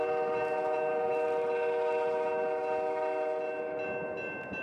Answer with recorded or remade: recorded